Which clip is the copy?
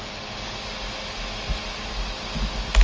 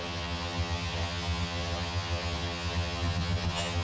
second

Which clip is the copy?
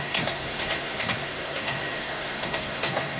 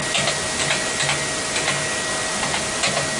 first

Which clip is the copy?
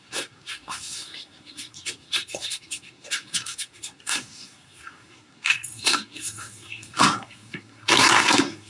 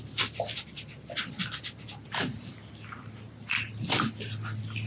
first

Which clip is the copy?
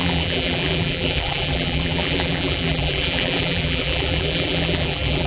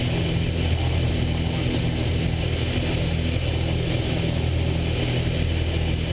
first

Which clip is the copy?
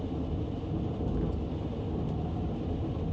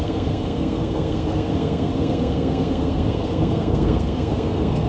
second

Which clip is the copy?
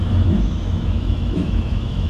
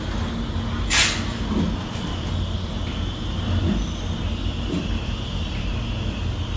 first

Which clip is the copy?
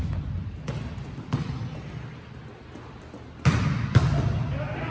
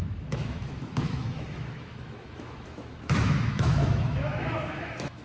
second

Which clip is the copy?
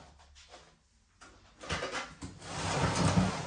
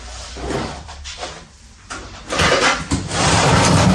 second